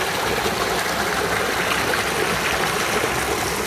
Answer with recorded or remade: recorded